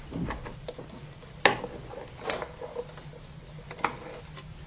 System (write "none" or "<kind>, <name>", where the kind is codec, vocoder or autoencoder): none